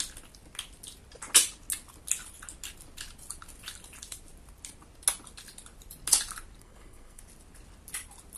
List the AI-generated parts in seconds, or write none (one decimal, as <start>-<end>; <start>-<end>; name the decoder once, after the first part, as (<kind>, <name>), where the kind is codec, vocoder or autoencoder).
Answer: 6.6-7.2 (codec, SNAC)